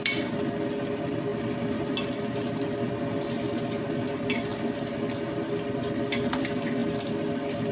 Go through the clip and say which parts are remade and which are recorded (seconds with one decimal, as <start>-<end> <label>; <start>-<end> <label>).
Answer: 0.0-7.7 recorded